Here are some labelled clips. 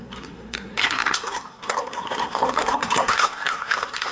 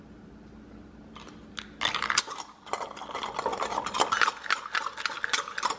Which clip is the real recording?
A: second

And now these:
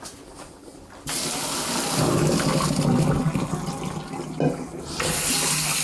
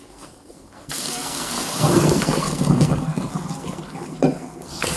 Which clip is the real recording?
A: first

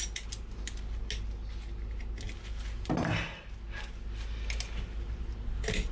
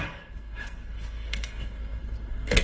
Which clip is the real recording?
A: first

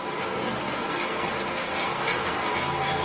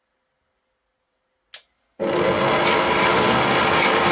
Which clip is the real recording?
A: second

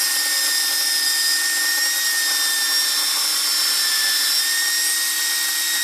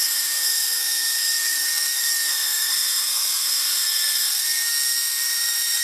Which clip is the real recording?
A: first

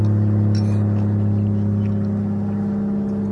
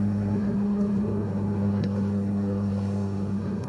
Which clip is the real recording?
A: first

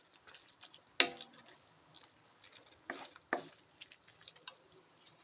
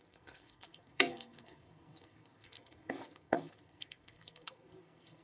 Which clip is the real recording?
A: first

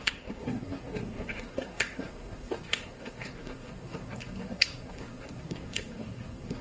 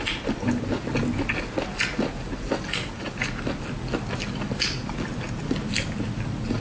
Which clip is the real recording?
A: second